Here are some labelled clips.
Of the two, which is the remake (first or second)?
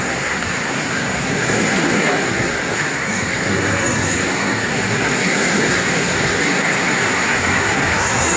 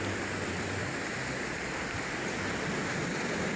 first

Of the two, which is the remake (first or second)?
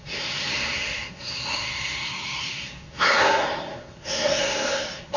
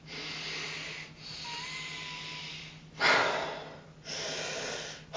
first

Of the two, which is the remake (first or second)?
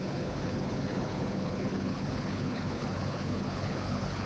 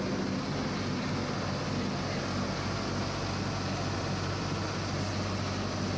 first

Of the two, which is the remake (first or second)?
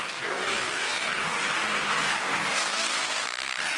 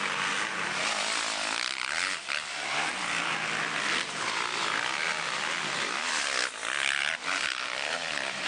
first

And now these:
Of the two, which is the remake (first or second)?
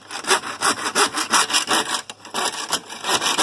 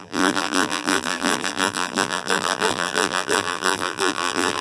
second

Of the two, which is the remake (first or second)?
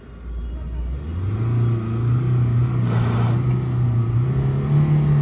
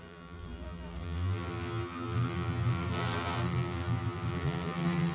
second